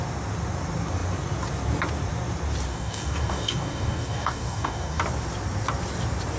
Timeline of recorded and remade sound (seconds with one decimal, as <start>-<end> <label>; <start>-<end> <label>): 0.0-2.7 recorded; 2.7-5.0 remade; 5.0-6.4 recorded